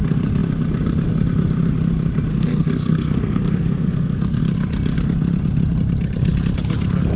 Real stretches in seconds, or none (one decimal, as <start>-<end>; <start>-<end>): 0.0-2.3; 4.4-7.2